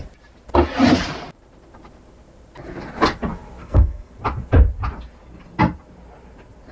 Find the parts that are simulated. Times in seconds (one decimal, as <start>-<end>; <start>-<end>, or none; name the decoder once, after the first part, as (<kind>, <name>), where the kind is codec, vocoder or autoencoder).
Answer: 3.6-4.1 (codec, SNAC)